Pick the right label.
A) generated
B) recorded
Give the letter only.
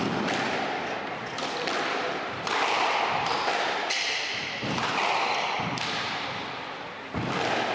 A